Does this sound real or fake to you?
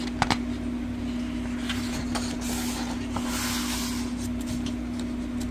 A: real